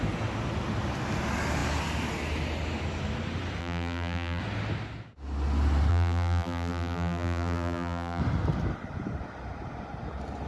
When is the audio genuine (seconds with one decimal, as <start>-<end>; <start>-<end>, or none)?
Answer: 0.0-3.6; 4.4-5.9; 8.2-10.5